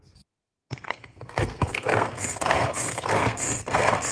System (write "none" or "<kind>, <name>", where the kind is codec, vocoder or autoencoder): codec, SNAC